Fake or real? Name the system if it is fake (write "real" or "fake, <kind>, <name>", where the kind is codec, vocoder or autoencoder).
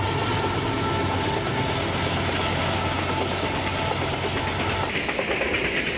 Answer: real